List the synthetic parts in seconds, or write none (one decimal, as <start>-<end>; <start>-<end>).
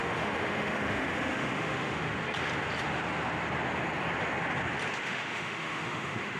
0.0-2.1; 5.0-6.4